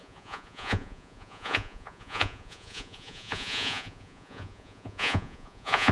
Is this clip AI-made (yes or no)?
yes